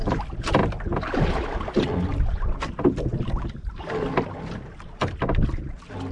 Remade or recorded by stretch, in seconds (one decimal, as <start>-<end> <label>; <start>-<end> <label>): 0.0-2.1 recorded; 2.1-3.1 remade; 3.1-6.1 recorded